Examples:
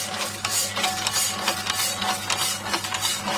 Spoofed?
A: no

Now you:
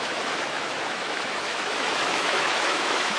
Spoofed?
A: yes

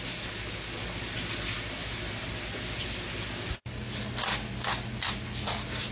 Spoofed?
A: no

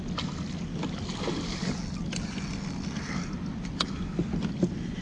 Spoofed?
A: no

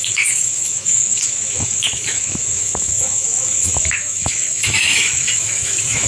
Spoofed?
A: yes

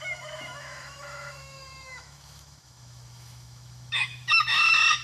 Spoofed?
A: yes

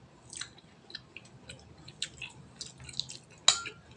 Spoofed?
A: no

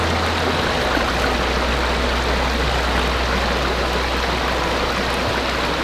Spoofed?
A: no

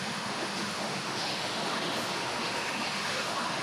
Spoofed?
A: yes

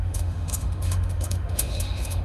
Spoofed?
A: yes